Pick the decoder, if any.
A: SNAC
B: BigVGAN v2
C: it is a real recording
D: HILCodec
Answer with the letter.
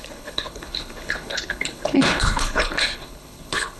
D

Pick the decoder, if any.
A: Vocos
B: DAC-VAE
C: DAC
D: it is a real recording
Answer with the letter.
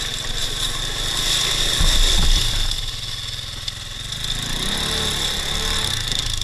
D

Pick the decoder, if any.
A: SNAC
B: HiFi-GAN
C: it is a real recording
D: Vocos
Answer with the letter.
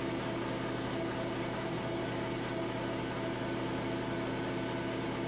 C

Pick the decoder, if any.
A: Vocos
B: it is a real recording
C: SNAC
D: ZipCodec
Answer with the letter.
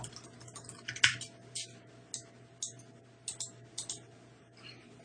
B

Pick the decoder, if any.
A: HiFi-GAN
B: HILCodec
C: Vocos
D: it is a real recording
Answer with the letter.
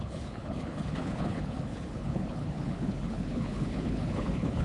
B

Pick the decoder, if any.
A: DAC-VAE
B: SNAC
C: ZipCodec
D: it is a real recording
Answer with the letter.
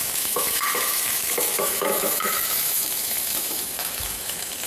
A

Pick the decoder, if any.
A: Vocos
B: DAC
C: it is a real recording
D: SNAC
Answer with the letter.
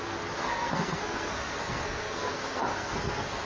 D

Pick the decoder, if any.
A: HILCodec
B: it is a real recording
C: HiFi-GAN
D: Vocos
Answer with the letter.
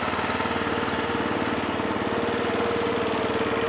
B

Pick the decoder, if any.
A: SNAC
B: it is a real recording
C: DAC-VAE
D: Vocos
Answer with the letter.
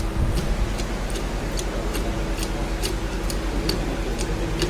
B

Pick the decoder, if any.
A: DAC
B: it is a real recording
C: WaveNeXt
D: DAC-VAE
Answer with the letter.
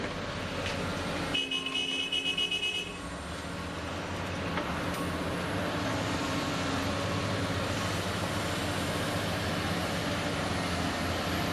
B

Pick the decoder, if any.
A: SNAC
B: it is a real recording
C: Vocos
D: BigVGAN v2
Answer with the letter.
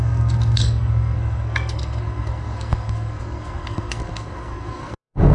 A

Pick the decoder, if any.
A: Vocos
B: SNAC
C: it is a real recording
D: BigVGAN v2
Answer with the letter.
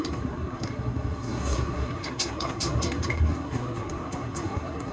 B